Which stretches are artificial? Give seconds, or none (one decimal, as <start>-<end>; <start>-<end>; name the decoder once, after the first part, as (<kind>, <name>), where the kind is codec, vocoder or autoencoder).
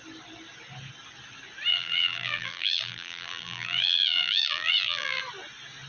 1.7-5.2 (vocoder, BigVGAN v2)